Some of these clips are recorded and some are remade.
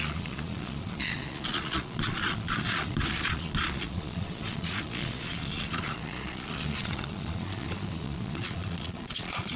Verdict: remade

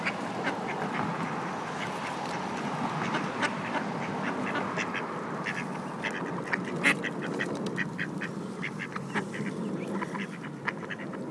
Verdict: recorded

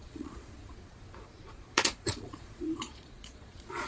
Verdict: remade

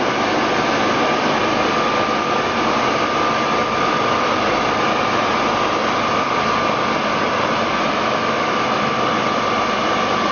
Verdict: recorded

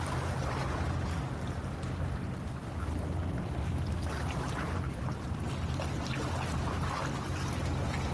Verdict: recorded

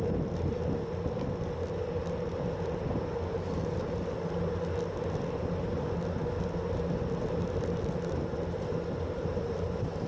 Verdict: recorded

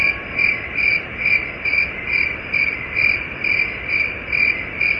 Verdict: recorded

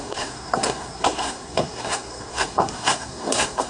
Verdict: remade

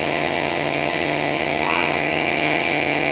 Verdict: remade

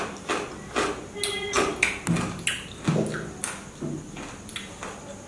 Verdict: recorded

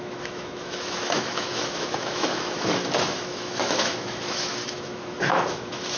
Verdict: remade